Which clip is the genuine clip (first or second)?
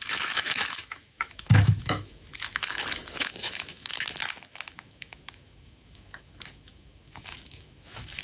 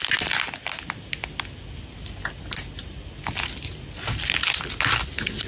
second